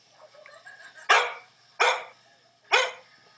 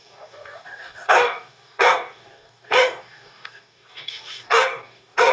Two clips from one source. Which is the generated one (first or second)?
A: second